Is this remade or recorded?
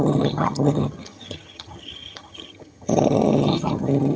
remade